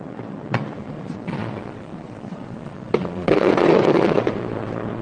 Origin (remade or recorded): remade